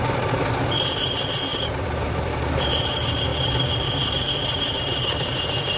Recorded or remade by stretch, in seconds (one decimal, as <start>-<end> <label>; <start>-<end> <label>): 0.0-5.8 remade